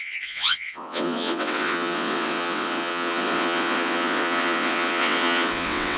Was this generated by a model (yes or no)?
yes